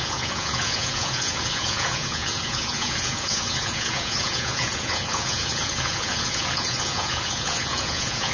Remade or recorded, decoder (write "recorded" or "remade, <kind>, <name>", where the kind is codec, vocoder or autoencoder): remade, vocoder, Vocos